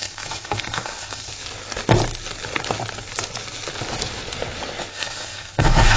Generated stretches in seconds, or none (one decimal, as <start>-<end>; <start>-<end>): 0.0-1.3; 4.9-6.0